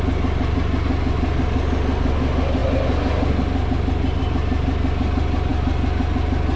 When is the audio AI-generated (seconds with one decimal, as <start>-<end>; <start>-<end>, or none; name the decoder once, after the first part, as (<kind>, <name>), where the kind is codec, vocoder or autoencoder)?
none